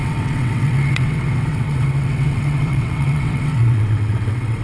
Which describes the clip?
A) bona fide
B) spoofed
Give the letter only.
B